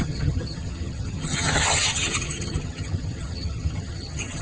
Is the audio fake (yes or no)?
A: yes